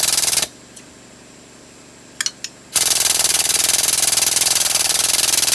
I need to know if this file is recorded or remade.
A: recorded